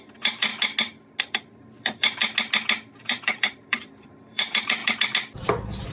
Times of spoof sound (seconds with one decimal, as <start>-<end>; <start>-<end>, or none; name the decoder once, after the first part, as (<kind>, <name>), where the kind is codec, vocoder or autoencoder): 0.0-0.5 (vocoder, BigVGAN v2); 1.2-2.2; 3.0-4.8; 5.5-5.9